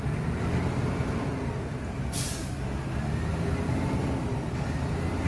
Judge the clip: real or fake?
real